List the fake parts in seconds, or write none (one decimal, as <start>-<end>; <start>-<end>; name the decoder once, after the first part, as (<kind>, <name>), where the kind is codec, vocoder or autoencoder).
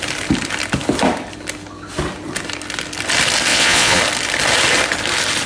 3.5-4.0 (vocoder, Vocos)